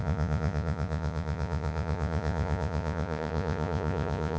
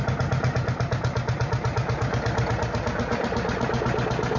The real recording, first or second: second